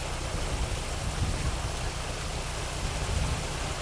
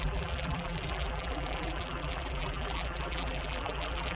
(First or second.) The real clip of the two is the first